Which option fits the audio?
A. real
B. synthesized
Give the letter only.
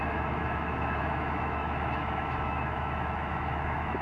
B